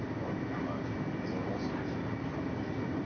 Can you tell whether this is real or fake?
real